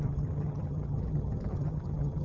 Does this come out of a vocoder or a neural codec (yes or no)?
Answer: yes